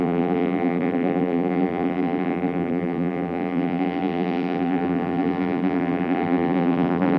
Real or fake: fake